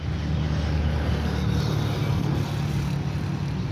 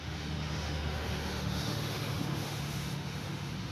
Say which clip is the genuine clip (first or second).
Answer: first